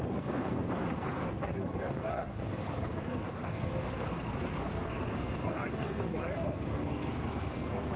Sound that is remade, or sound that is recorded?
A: remade